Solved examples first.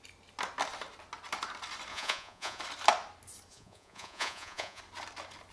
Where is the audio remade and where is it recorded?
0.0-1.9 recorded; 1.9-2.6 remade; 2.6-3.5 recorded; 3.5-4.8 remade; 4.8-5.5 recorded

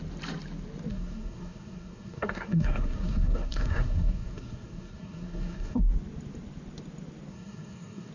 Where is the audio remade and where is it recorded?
0.0-0.9 recorded; 0.9-5.8 remade; 5.8-7.3 recorded; 7.3-8.1 remade

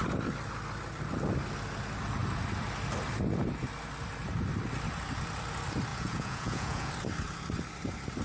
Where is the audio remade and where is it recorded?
0.0-5.9 recorded; 5.9-6.9 remade; 6.9-8.2 recorded